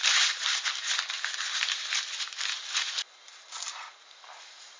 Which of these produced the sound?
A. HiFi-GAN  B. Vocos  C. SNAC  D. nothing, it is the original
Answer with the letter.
D